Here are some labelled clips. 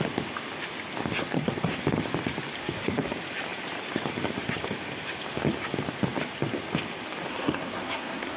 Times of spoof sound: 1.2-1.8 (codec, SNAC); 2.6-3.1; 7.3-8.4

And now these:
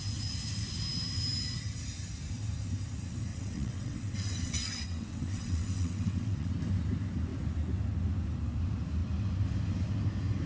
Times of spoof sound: 3.3-6.5 (vocoder, WaveNeXt)

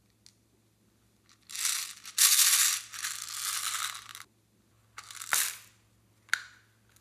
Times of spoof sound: none

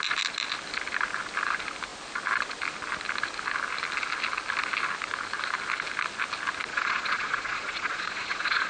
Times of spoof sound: 6.7-8.7 (vocoder, Vocos)

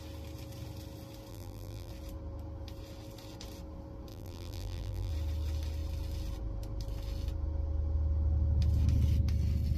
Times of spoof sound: 1.3-1.9 (vocoder, BigVGAN v2); 4.1-5.1